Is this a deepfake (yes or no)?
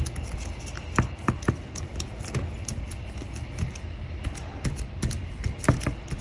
no